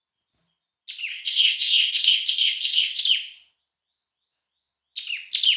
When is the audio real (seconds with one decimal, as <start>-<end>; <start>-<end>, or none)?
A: 0.0-1.1; 3.0-5.6